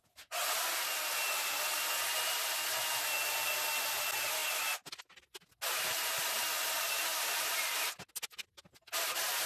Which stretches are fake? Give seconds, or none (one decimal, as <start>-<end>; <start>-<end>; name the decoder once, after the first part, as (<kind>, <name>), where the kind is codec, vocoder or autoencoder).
none